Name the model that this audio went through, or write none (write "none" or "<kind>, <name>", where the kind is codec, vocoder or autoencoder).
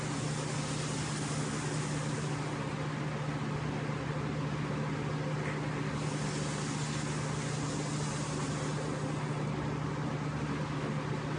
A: none